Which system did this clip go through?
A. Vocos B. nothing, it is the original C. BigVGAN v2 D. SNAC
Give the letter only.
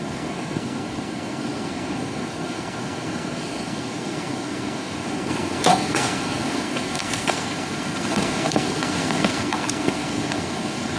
D